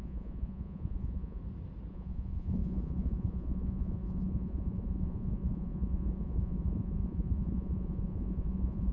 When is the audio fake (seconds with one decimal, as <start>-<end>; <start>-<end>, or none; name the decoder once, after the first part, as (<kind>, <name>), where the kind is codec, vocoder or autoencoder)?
0.0-1.4 (vocoder, Vocos); 1.9-8.9

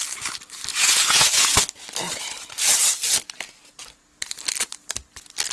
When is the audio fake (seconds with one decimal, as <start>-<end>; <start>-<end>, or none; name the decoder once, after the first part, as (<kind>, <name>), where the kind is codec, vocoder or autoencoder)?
0.7-1.5 (vocoder, Vocos)

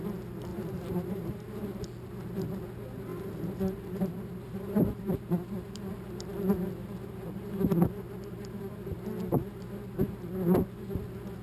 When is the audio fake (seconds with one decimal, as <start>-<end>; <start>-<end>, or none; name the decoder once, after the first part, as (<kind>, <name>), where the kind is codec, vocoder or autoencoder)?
0.5-1.6 (vocoder, BigVGAN v2); 3.1-5.8

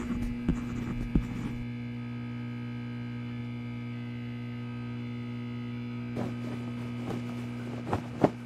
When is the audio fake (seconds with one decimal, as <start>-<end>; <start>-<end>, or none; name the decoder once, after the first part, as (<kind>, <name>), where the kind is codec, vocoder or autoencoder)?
none

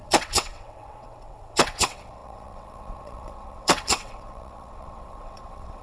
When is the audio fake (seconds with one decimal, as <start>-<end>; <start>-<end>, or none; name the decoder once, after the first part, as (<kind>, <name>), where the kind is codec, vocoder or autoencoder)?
0.0-5.8 (vocoder, WaveNeXt)

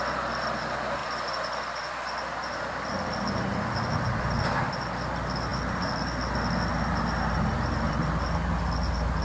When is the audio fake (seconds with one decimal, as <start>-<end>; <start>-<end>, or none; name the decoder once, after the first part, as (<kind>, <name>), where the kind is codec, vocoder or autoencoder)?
none

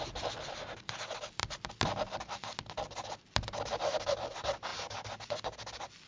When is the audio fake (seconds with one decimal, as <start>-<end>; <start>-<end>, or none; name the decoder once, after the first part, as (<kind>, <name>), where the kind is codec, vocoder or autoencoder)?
none

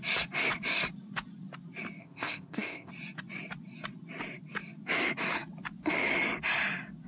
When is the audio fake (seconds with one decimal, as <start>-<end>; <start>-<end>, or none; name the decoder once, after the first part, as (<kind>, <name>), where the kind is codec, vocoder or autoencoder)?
2.0-2.9 (codec, ZipCodec)